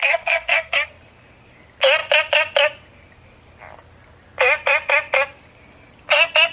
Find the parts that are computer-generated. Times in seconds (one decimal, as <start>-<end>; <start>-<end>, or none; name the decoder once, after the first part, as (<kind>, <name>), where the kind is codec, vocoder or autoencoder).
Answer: 0.0-0.9 (codec, SNAC)